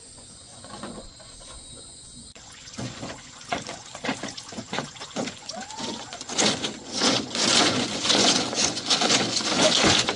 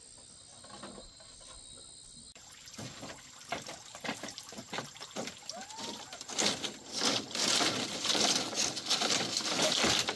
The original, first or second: second